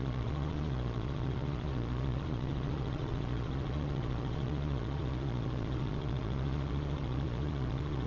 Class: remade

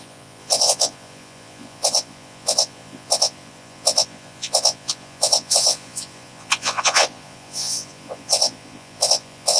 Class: remade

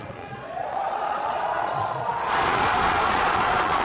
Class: remade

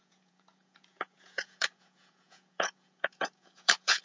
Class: remade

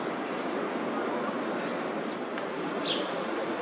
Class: recorded